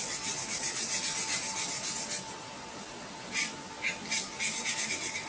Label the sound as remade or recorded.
recorded